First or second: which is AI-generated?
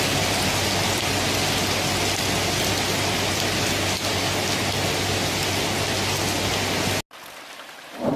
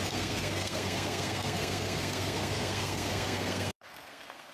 second